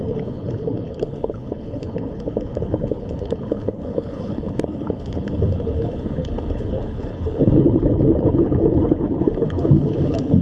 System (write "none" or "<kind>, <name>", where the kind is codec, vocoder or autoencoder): codec, HILCodec